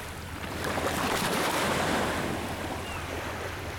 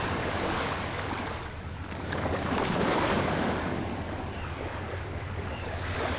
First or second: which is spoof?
second